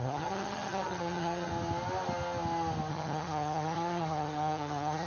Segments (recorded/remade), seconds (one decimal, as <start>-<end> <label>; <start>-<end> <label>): 0.0-1.5 remade; 1.5-2.9 recorded; 2.9-5.1 remade